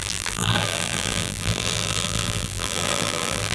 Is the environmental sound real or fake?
fake